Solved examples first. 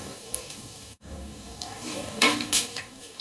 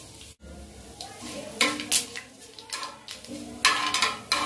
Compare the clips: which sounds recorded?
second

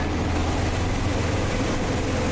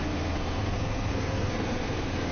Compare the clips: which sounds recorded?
first